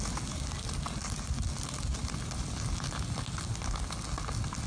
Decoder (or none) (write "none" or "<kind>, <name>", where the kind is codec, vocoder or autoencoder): none